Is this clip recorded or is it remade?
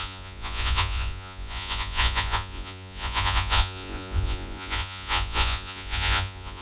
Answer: remade